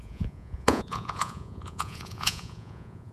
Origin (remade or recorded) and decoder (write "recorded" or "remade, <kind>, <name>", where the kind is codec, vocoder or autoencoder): remade, vocoder, Vocos